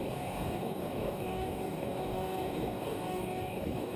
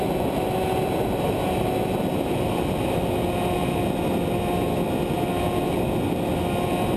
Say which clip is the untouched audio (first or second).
second